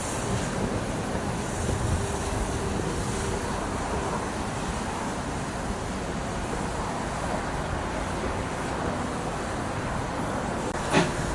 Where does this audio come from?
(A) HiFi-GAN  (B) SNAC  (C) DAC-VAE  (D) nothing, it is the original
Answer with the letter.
D